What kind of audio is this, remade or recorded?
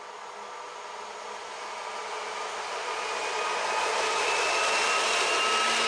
recorded